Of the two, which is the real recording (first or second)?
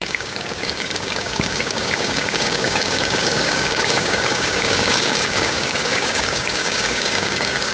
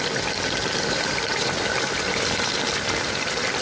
second